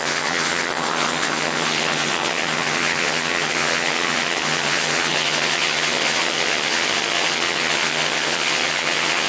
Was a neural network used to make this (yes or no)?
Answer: yes